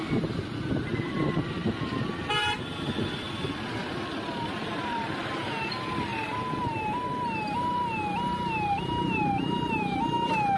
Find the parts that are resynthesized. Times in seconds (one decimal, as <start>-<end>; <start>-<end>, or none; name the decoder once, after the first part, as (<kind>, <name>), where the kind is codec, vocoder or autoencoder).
none